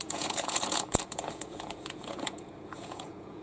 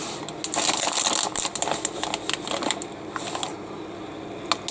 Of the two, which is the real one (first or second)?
second